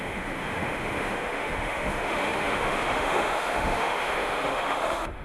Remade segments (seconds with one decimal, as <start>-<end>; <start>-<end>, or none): 0.0-5.2